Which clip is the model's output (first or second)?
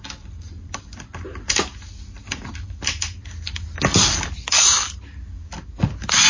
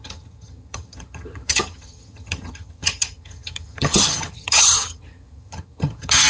second